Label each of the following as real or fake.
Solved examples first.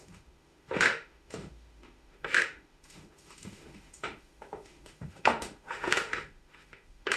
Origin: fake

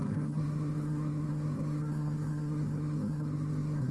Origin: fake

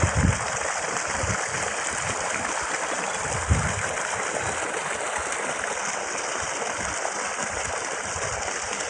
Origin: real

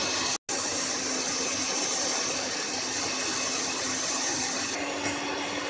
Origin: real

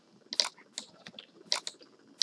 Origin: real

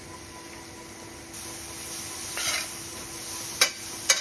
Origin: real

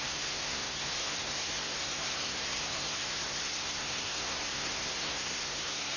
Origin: fake